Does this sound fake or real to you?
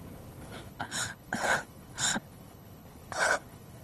fake